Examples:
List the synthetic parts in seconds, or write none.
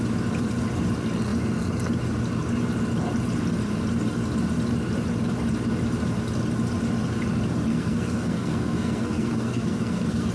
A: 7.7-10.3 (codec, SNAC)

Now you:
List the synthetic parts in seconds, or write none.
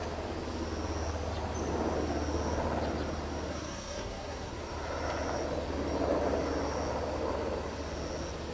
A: 3.5-4.5 (codec, SNAC)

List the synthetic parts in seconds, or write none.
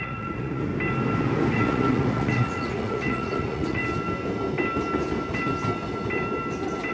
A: 0.0-0.7 (vocoder, Vocos); 1.5-3.8